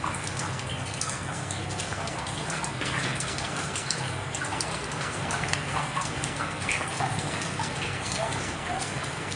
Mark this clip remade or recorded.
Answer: remade